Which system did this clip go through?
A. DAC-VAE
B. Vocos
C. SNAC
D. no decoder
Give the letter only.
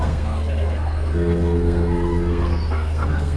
C